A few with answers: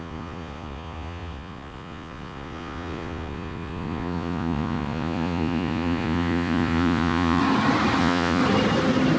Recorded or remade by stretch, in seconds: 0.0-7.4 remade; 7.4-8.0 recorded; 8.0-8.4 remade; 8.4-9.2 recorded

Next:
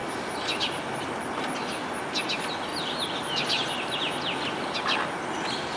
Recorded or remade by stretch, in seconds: 0.0-1.0 remade; 1.0-2.7 recorded; 2.7-4.0 remade; 4.0-5.8 recorded

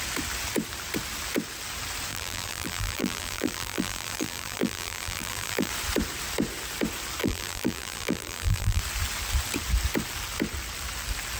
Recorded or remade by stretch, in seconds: 0.0-2.1 recorded; 2.1-5.7 remade; 5.7-7.2 recorded; 7.2-8.8 remade; 8.8-11.4 recorded

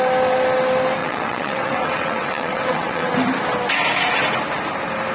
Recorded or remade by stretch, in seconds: 0.0-1.0 recorded; 1.0-3.1 remade; 3.1-5.1 recorded

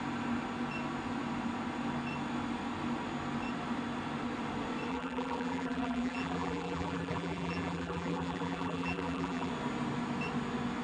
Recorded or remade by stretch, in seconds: 0.0-4.9 recorded; 4.9-9.5 remade; 9.5-10.8 recorded

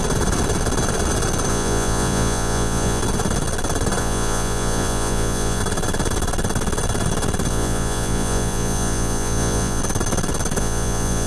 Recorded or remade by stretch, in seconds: 0.0-1.5 recorded; 1.5-3.0 remade; 3.0-4.0 recorded; 4.0-5.6 remade; 5.6-7.5 recorded; 7.5-9.8 remade; 9.8-10.6 recorded; 10.6-11.3 remade

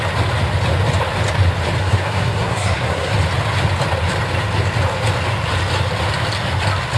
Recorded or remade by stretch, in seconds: 0.0-1.8 recorded; 1.8-3.1 remade; 3.1-7.0 recorded